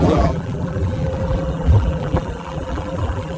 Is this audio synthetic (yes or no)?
yes